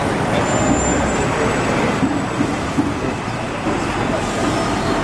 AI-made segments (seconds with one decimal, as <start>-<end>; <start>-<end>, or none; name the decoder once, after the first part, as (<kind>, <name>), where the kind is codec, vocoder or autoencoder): 0.9-3.9 (vocoder, BigVGAN v2)